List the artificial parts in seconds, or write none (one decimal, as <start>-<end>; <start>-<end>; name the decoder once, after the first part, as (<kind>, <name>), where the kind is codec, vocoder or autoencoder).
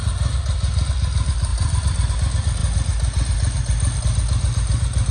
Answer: 1.5-2.1 (vocoder, BigVGAN v2)